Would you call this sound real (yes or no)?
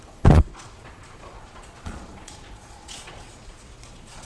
no